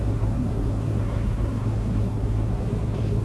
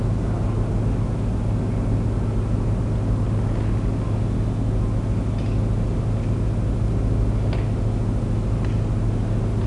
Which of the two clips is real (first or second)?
second